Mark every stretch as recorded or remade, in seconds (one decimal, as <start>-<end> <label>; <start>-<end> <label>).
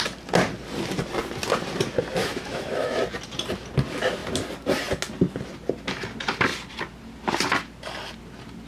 0.0-2.2 recorded; 2.2-3.0 remade; 3.0-8.7 recorded